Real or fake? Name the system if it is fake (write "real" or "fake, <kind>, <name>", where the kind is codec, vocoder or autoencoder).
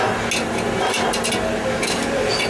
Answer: real